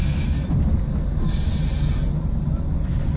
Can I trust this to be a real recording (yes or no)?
yes